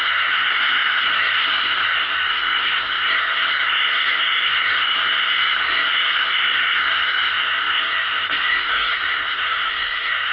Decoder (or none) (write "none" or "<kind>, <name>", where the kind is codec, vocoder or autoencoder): codec, SNAC